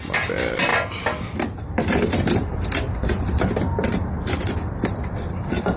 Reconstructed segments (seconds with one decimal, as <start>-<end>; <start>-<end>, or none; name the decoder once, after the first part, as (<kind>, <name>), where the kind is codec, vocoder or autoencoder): 0.0-5.8 (vocoder, BigVGAN v2)